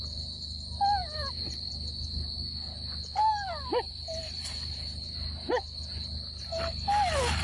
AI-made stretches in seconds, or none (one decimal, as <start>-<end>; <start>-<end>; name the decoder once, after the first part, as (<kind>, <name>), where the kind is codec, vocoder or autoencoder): 1.0-1.7 (vocoder, BigVGAN v2); 3.9-5.5